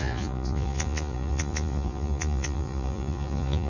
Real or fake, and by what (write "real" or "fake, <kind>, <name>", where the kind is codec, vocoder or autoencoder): fake, vocoder, Vocos